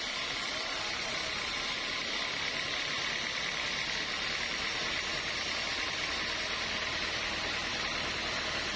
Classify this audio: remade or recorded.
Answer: recorded